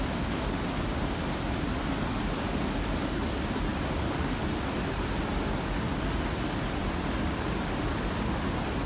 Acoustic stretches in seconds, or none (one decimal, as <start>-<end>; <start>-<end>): 0.0-8.9